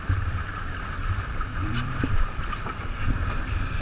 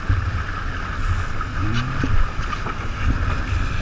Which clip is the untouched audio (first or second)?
second